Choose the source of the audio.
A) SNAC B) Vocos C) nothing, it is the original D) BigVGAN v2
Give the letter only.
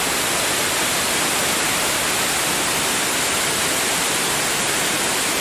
C